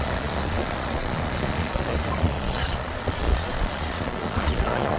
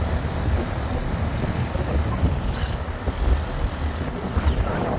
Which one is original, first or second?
second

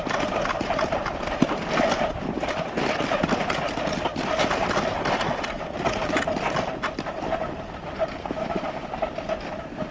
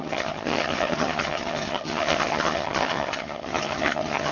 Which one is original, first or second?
first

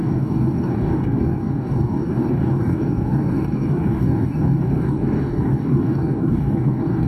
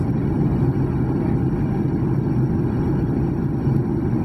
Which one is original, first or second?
second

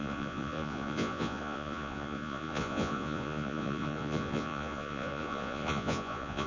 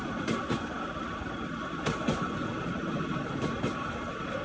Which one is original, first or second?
second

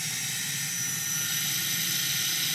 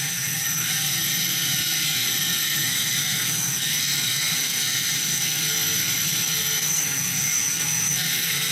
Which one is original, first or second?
first